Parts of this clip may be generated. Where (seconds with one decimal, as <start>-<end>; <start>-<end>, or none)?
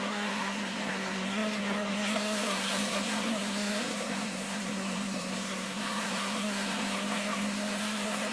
0.0-8.3